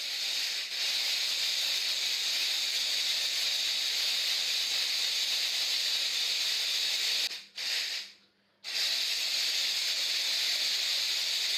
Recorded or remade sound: recorded